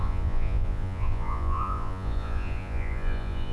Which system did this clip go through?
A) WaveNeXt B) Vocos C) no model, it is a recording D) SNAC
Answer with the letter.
B